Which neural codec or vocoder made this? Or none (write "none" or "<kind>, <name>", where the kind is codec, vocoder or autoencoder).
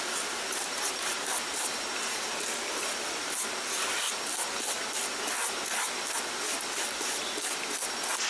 none